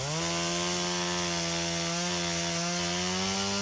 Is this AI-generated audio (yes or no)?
no